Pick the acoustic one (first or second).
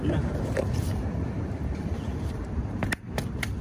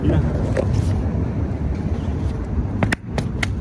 second